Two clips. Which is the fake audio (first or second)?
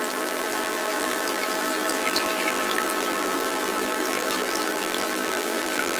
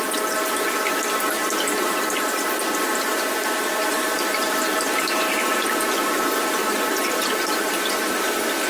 first